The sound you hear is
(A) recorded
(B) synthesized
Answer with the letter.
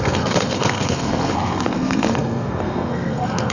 B